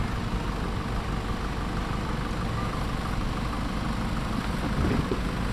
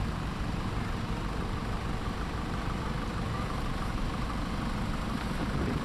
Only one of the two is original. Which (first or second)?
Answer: first